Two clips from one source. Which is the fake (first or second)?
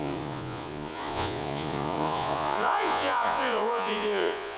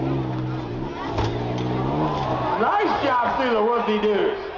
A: first